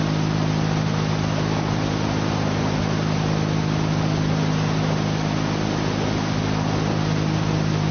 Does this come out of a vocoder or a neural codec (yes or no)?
no